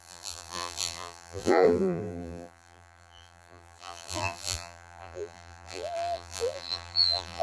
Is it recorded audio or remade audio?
remade